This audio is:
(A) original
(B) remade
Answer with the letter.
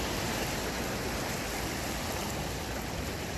A